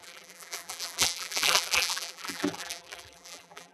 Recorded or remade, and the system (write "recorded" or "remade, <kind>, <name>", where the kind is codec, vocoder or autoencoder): remade, vocoder, BigVGAN v2